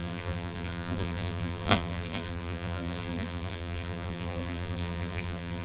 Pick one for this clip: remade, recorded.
remade